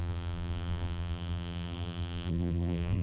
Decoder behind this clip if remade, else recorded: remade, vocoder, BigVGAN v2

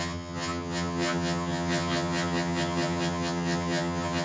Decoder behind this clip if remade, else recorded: remade, vocoder, HiFi-GAN